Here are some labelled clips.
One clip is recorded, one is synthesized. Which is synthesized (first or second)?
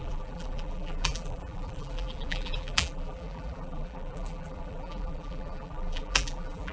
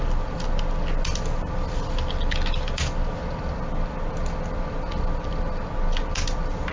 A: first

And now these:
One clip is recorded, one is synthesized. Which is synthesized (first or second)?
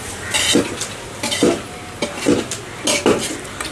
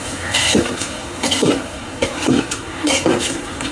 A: second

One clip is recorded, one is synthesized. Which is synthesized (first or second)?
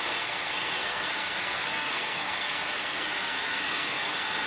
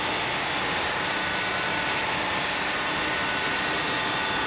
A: first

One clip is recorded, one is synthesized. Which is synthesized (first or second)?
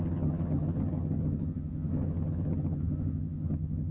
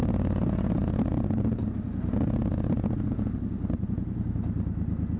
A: first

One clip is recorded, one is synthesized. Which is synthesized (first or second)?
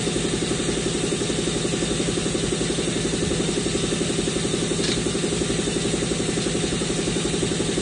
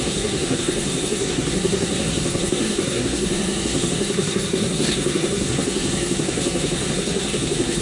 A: second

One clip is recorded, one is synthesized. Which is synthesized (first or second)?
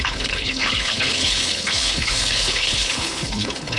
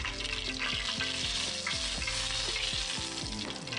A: first